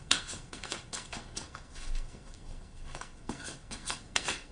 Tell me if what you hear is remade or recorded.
remade